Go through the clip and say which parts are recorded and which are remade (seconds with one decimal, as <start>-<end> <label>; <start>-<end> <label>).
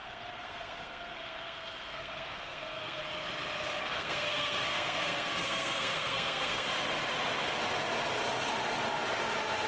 0.0-3.0 remade; 3.0-3.8 recorded; 3.8-6.7 remade; 6.7-9.7 recorded